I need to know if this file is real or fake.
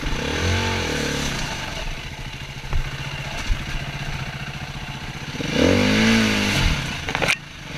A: real